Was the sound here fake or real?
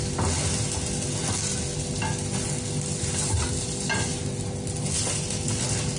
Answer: real